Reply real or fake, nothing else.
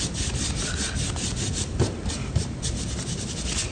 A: real